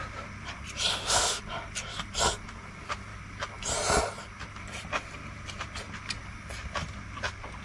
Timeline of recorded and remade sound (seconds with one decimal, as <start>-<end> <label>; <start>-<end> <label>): 0.0-0.9 recorded; 0.9-1.4 remade; 1.4-7.6 recorded